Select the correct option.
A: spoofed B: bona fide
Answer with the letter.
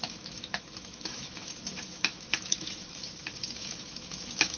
A